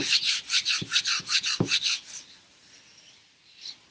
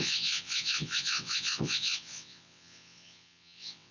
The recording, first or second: first